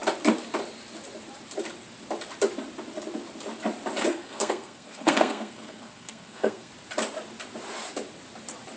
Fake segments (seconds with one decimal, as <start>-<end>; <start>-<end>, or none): 4.1-6.7

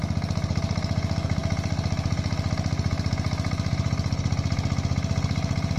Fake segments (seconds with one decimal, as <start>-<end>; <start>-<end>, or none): none

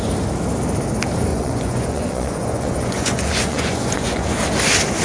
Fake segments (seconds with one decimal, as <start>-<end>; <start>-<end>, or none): 1.3-4.3